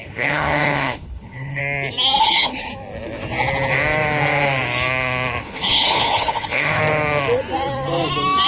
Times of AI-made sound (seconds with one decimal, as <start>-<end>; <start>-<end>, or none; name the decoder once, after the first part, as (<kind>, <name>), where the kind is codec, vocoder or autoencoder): 0.0-1.6 (codec, HILCodec); 2.2-2.7; 5.4-6.8